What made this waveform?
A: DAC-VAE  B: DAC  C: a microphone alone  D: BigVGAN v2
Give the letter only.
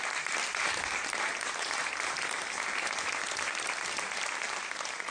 D